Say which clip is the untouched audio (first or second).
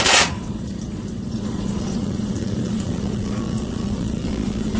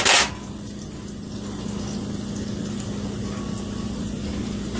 second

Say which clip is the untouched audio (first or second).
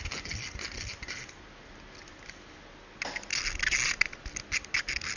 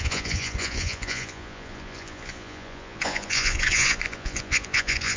first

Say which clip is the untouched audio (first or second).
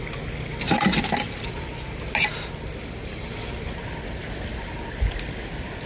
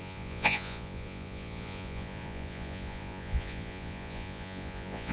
first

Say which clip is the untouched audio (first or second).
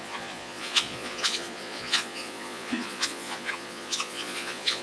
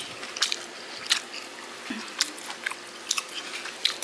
second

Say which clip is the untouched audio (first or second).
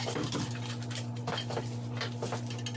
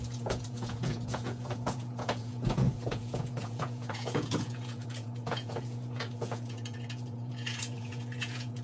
first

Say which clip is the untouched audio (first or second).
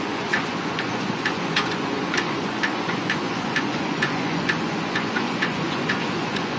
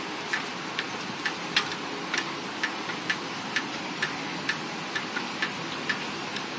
second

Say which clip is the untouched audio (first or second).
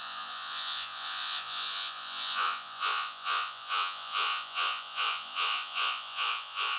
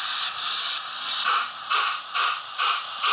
second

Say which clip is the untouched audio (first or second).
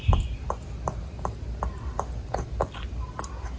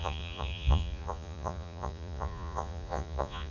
first